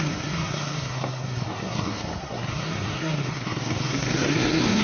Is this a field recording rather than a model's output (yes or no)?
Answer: no